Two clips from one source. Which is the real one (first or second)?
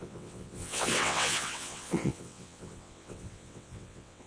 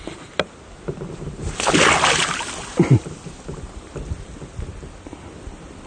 second